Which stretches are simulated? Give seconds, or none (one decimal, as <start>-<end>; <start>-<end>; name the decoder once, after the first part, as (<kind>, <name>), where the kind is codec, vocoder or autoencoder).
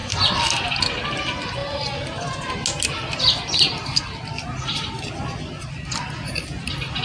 none